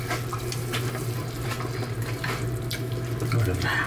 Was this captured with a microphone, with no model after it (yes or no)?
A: yes